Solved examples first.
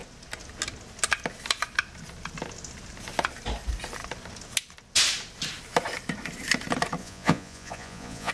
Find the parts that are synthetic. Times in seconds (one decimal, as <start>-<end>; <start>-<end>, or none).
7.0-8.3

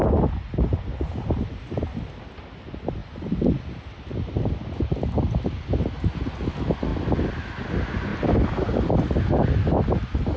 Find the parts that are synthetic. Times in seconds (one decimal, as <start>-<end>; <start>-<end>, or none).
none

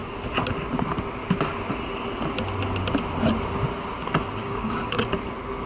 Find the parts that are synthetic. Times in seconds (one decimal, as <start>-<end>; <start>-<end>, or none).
4.4-5.0

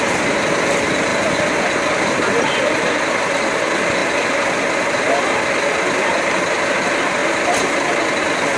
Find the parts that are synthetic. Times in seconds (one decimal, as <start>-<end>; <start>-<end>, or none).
none

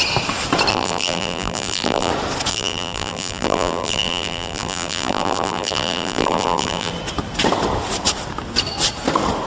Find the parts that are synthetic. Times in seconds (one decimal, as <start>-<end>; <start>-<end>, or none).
0.7-2.1; 2.5-6.9

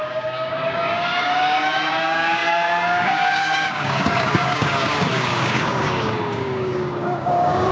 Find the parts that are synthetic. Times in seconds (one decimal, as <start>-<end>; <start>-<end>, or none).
0.0-7.7

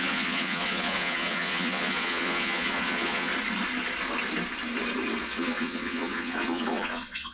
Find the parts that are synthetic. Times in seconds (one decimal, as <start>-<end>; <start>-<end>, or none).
0.0-3.3; 5.2-7.3